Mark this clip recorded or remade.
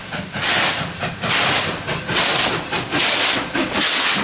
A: recorded